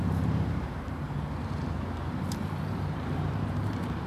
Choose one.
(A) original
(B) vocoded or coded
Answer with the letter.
B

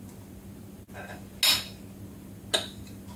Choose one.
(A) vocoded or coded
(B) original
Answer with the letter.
B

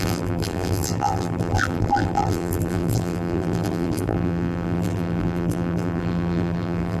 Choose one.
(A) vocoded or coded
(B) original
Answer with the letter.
A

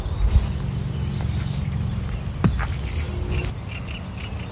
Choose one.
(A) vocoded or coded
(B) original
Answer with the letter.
B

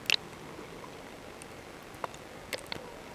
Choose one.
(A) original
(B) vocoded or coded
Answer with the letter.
A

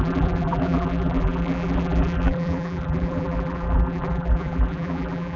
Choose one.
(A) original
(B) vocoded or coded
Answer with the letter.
B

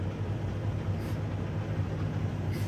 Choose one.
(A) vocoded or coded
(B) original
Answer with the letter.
B